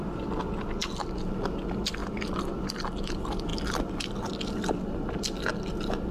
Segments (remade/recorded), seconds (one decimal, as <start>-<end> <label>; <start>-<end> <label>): 0.0-6.1 recorded